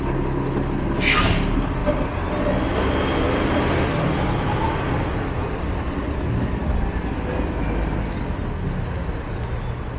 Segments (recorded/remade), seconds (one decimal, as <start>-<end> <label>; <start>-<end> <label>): 0.0-10.0 recorded